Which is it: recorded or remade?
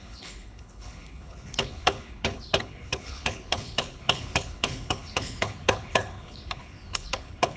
remade